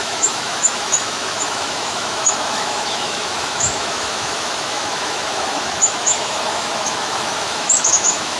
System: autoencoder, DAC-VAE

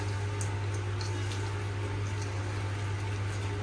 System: none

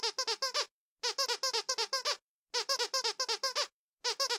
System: none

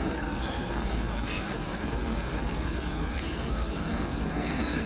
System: codec, SNAC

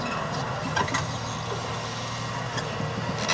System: none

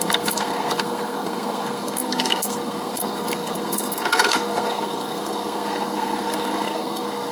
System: codec, SNAC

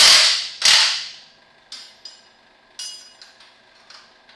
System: none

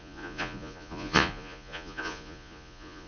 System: vocoder, Vocos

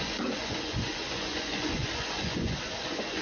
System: vocoder, Vocos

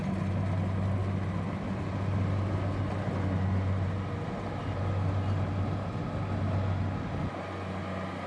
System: none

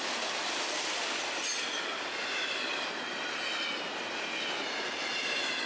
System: none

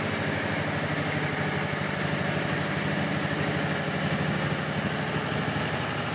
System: none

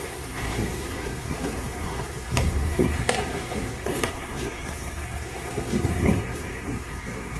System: codec, SNAC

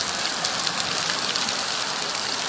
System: none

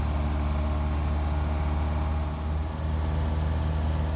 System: none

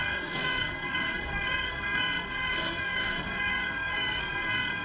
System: codec, SNAC